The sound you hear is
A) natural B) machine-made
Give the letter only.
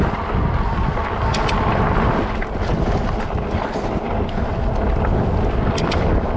A